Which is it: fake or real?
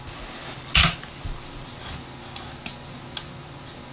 real